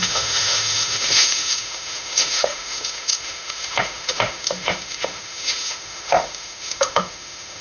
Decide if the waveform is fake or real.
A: fake